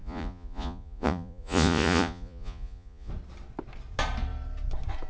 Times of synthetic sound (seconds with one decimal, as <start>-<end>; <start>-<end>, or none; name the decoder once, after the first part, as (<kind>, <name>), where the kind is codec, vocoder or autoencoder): 0.0-3.1 (vocoder, Vocos)